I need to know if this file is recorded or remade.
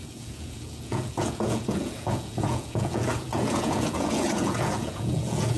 remade